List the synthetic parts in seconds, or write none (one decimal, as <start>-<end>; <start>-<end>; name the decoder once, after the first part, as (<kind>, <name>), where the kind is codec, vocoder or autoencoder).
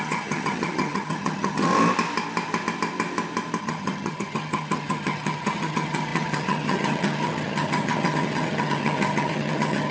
0.0-1.7 (vocoder, HiFi-GAN); 3.6-9.9